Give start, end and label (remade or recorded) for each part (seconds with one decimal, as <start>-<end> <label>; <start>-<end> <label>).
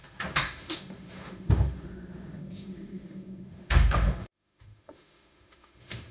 0.0-6.1 remade